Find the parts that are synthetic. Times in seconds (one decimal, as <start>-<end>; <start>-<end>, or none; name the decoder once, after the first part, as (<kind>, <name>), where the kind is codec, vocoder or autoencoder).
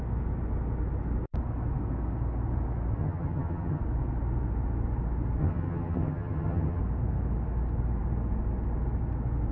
3.0-3.8 (vocoder, HiFi-GAN); 5.4-6.8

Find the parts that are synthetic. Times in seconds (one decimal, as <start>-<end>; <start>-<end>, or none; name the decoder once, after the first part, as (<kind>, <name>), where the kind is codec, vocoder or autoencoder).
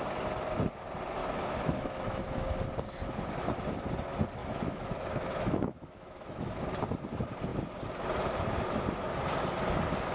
1.2-2.2 (autoencoder, DAC-VAE); 4.4-6.6